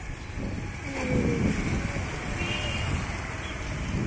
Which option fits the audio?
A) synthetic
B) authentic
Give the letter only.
B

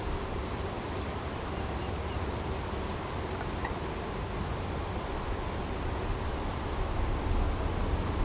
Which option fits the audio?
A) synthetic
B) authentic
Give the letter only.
B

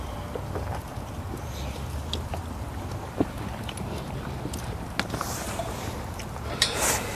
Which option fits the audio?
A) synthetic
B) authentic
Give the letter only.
B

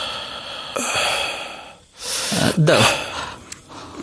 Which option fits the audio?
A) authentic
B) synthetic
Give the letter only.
A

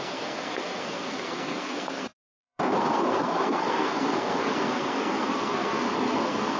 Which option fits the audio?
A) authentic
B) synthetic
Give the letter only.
B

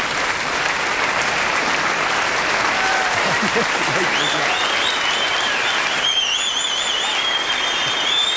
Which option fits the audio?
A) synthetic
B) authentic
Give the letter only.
B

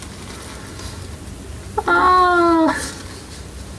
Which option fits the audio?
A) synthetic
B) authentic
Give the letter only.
B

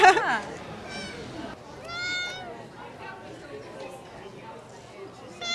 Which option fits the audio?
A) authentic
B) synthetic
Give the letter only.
A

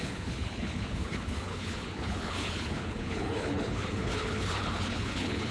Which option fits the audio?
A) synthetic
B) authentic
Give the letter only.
A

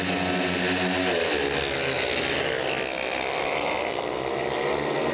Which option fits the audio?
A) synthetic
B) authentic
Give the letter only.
B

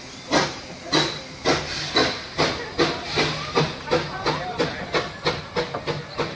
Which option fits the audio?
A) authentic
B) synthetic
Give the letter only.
A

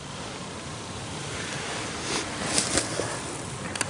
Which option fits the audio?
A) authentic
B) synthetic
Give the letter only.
A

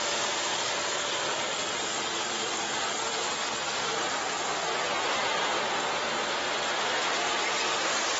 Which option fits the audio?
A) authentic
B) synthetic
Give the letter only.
A